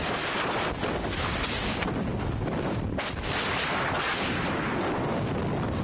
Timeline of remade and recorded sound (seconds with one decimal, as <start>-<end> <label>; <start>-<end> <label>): 0.0-0.6 remade; 0.6-2.1 recorded; 2.1-5.8 remade